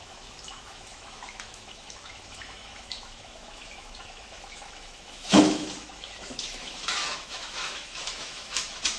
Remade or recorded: remade